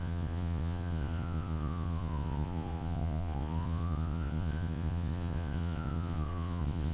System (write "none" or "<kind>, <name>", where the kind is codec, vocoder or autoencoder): vocoder, Vocos